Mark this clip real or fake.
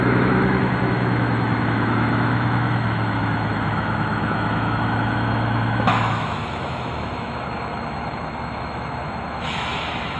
fake